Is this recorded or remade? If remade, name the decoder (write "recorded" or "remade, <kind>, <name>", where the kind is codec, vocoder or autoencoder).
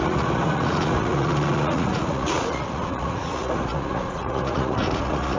remade, vocoder, Vocos